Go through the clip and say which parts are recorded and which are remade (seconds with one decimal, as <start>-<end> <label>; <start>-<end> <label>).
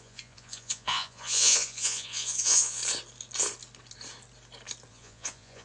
0.0-2.8 remade; 2.8-4.9 recorded; 4.9-5.6 remade